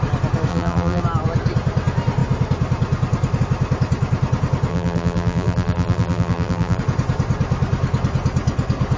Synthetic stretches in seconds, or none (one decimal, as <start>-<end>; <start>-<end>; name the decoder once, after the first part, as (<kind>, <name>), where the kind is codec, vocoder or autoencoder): 0.5-1.0 (vocoder, BigVGAN v2); 4.7-6.8